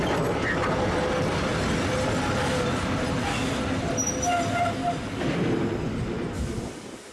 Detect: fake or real real